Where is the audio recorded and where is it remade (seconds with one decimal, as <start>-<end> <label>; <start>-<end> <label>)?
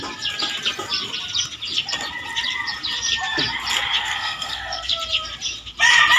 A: 0.0-4.0 recorded; 4.0-4.9 remade; 4.9-6.2 recorded